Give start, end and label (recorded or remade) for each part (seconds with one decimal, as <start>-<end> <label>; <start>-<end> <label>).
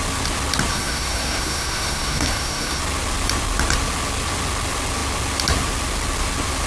0.0-0.7 recorded; 0.7-2.8 remade; 2.8-6.7 recorded